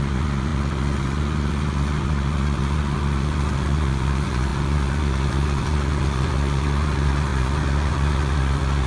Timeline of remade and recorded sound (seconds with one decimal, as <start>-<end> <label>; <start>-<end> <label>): 0.0-8.9 remade